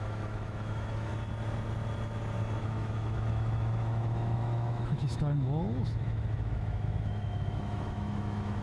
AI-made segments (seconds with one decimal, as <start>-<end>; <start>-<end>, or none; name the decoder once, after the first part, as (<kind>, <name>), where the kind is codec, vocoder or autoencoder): 0.0-1.1 (autoencoder, DAC-VAE); 2.6-8.6